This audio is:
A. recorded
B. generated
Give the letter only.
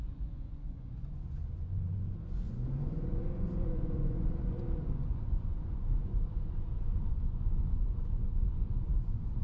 B